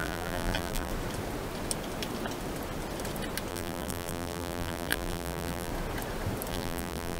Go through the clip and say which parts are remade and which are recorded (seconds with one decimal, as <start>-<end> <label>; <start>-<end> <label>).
0.0-0.9 remade; 0.9-3.5 recorded; 3.5-5.7 remade; 5.7-6.5 recorded; 6.5-7.2 remade